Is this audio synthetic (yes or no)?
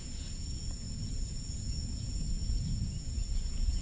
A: yes